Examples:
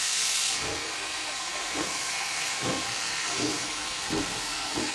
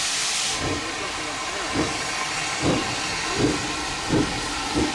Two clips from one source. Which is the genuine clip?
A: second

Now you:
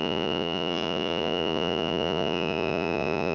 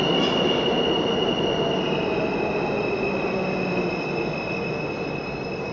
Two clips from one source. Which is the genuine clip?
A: second